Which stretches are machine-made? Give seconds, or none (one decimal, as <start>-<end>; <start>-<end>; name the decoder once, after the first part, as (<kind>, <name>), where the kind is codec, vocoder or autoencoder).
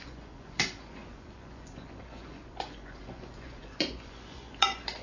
0.0-5.0 (vocoder, Vocos)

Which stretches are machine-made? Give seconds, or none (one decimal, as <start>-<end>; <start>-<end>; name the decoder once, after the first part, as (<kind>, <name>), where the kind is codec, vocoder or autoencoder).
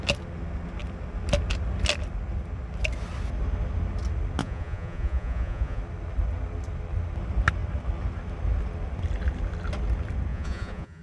4.4-5.8 (vocoder, Vocos); 10.3-11.0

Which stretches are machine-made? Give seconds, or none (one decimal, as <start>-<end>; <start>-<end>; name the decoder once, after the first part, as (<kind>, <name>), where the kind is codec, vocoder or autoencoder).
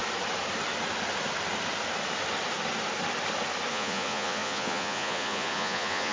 3.7-6.1 (vocoder, Vocos)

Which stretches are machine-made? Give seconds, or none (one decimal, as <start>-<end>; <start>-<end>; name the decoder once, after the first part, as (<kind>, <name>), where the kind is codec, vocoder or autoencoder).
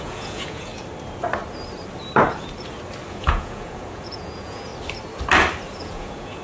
0.0-0.7 (vocoder, Vocos); 3.1-4.7; 5.8-6.4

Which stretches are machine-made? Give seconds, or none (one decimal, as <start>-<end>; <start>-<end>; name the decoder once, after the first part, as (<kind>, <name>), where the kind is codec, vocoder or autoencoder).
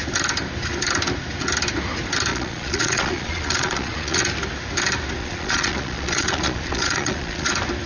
2.3-4.2 (vocoder, Vocos); 5.2-7.5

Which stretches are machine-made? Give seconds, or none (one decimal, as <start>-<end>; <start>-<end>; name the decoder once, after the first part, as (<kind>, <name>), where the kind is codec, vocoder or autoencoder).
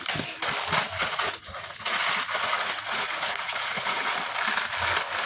0.8-4.0 (vocoder, Vocos)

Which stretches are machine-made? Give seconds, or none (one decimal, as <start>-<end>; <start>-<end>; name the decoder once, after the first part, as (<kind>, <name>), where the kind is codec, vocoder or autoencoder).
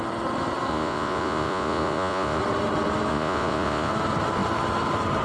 0.7-2.4 (vocoder, Vocos); 3.1-3.9